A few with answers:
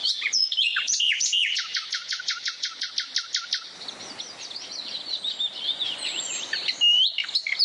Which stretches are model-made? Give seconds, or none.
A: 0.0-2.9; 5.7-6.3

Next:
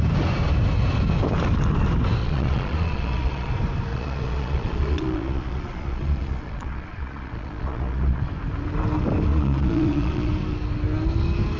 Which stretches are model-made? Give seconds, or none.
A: 2.2-3.5; 3.9-8.3; 9.3-10.3

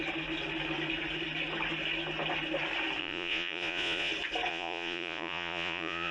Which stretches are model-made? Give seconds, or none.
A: 3.0-4.1; 4.5-6.1

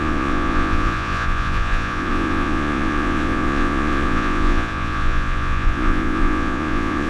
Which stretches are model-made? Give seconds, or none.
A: 0.0-7.1

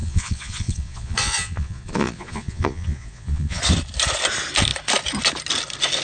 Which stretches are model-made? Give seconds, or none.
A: 0.0-3.6

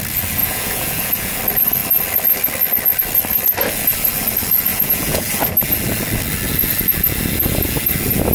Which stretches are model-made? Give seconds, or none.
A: 0.4-1.4; 4.7-5.3

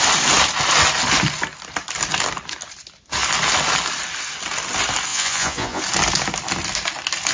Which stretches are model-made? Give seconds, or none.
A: 5.1-5.8

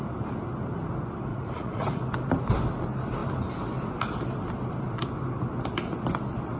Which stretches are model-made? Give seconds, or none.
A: 1.3-2.0